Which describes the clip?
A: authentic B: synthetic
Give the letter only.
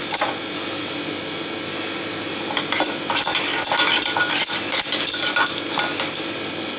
A